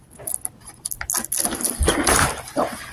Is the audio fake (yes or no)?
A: no